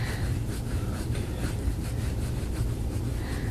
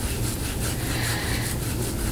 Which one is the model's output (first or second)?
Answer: first